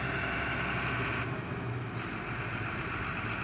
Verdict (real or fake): real